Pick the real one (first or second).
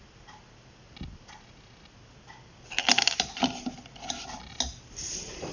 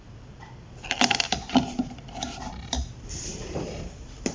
first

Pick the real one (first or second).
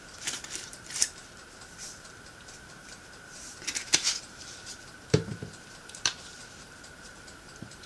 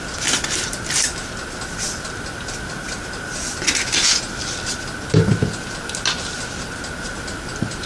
second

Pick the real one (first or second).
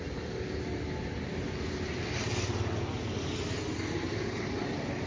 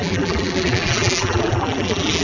first